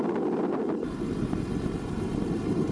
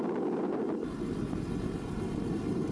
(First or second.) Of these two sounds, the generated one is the first